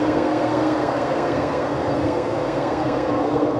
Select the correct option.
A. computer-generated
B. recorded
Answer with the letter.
A